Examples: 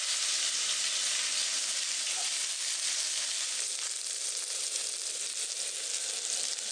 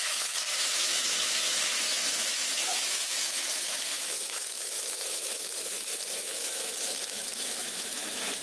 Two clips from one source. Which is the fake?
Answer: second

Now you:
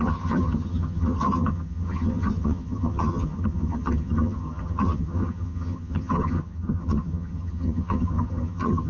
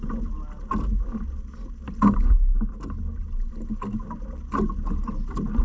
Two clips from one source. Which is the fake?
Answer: first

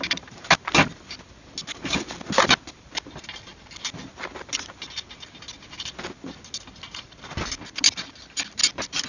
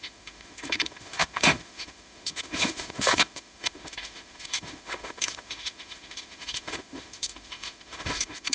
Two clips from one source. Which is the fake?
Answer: second